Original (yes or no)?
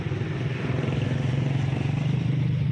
no